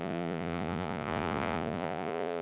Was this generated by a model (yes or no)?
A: yes